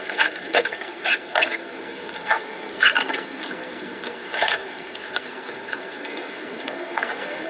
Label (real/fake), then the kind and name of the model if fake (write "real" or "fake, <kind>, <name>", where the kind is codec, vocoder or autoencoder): fake, codec, SNAC